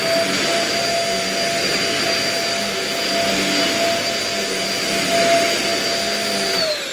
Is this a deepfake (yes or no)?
no